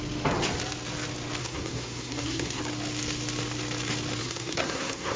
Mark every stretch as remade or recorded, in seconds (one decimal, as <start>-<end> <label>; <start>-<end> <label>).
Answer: 0.0-1.4 recorded; 1.4-2.6 remade; 2.6-4.2 recorded; 4.2-5.2 remade